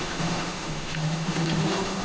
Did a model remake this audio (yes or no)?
yes